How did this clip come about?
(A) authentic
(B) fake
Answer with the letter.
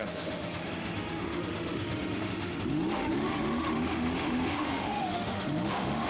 B